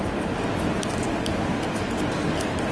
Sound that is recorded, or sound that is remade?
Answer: recorded